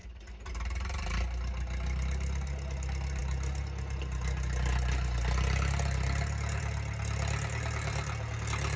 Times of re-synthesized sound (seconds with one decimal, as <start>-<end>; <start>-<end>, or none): none